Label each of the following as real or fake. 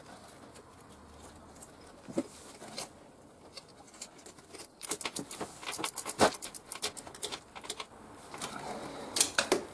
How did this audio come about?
real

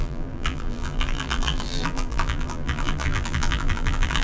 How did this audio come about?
fake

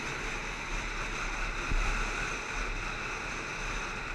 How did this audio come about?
real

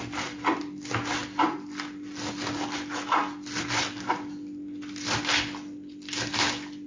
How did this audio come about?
real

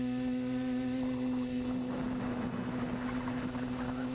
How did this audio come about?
real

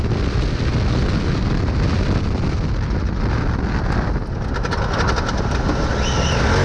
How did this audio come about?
real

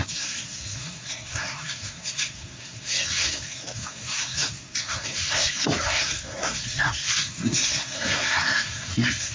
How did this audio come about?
fake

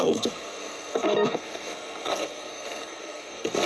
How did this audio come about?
fake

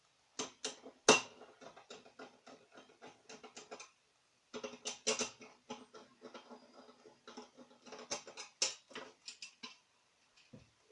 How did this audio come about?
real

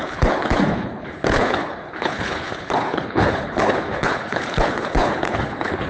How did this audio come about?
fake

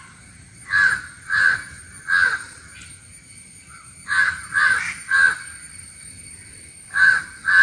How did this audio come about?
real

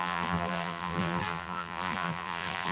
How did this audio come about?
fake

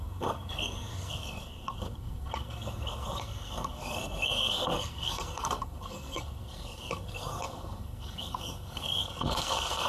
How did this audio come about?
fake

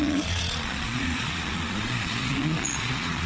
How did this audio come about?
fake